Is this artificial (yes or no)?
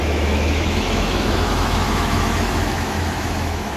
yes